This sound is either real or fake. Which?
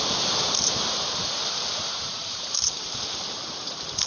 fake